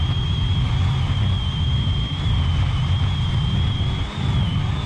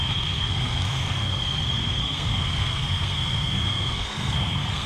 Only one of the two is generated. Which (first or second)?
second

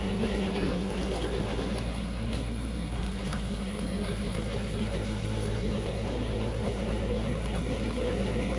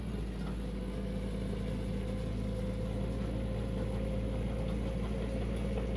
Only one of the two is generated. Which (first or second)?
first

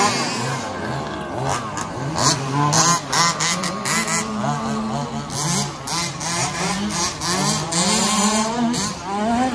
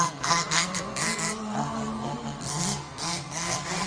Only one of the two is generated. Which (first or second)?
second